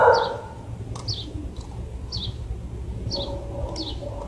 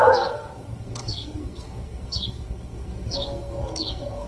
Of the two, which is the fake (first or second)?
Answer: second